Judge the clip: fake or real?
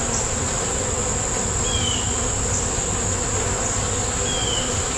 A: real